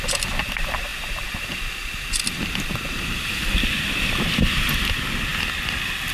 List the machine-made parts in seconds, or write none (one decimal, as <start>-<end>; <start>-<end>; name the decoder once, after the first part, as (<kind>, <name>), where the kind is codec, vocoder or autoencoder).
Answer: none

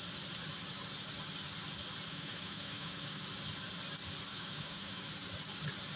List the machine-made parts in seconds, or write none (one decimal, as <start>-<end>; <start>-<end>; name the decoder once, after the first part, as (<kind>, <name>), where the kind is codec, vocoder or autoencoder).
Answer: 2.1-3.2 (autoencoder, DAC-VAE); 4.3-5.0